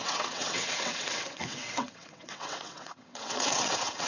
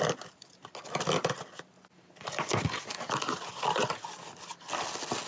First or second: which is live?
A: second